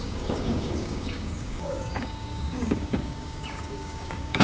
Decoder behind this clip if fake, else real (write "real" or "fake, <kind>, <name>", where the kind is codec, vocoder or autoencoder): fake, codec, DAC